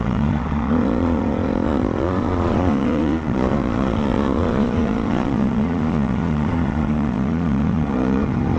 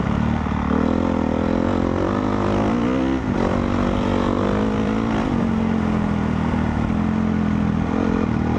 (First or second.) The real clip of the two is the second